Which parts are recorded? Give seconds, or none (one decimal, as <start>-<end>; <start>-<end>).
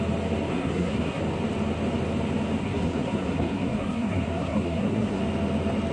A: 0.0-0.5; 1.2-2.6; 5.2-5.9